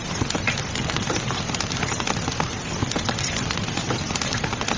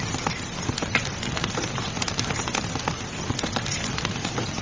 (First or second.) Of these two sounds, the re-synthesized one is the first